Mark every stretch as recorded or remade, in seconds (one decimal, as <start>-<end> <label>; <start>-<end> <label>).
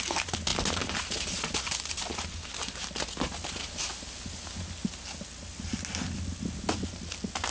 0.0-7.5 recorded